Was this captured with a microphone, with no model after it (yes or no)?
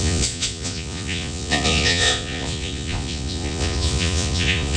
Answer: no